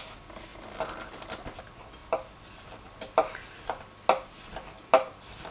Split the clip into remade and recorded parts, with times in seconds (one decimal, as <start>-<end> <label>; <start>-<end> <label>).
0.0-5.5 recorded